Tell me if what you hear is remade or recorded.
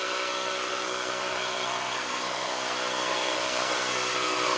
remade